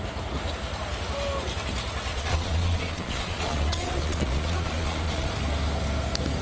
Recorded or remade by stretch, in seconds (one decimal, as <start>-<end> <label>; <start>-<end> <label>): 0.0-2.1 recorded; 2.1-5.3 remade; 5.3-6.4 recorded